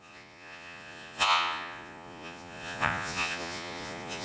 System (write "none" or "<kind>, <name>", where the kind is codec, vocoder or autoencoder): vocoder, Vocos